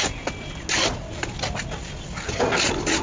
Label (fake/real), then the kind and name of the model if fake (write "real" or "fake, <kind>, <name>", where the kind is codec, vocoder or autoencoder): real